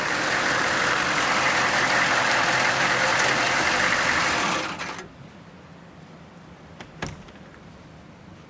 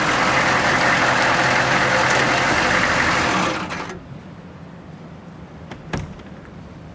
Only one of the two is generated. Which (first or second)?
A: first